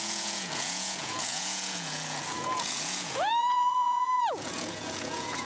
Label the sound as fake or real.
fake